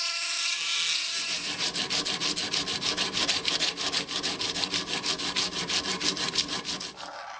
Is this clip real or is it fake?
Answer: real